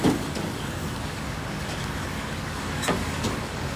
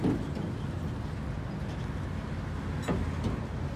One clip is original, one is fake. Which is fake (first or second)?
first